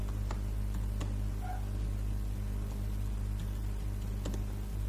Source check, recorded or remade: recorded